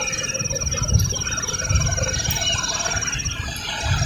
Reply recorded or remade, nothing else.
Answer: recorded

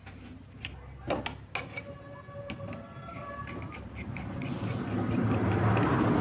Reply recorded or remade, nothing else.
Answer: recorded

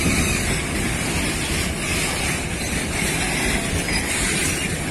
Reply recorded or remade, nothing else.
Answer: recorded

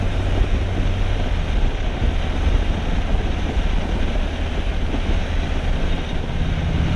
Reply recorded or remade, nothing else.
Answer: recorded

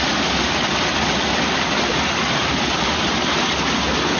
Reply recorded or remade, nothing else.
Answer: recorded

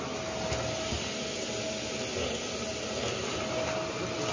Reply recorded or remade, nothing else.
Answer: recorded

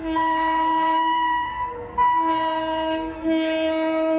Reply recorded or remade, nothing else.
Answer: remade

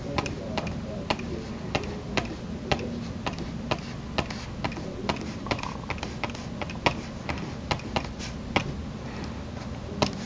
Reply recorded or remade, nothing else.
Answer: recorded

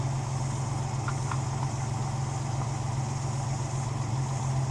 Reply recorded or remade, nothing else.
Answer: recorded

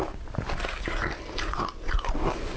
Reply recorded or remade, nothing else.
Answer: recorded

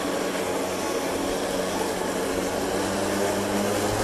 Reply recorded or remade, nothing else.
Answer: recorded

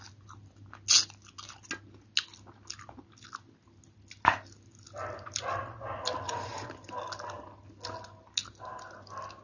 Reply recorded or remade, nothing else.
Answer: recorded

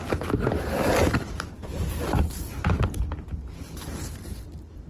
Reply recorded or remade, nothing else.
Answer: recorded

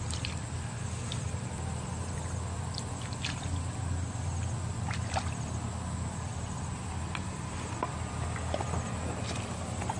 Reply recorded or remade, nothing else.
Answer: recorded